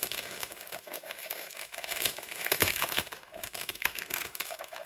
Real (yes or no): no